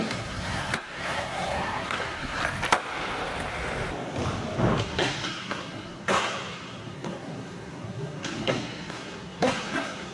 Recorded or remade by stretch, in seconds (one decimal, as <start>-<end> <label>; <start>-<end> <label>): 0.0-2.4 remade; 2.4-4.8 recorded; 4.8-10.1 remade